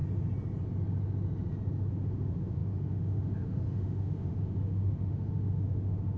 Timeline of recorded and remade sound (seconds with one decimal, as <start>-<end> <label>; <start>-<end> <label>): 0.0-1.9 recorded; 1.9-6.2 remade